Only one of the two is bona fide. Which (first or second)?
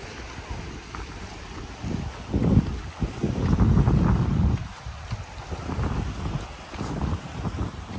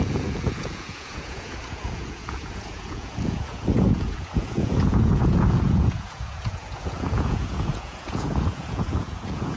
first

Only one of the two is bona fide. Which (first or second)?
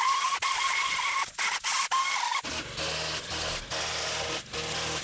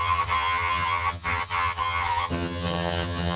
first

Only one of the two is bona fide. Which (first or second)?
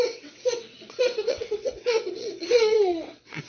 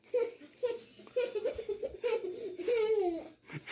second